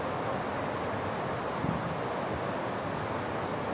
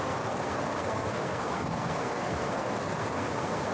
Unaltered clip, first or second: first